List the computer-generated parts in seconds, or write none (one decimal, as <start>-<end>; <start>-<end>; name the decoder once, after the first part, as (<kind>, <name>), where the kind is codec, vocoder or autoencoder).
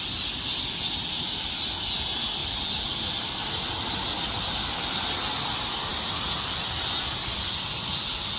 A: none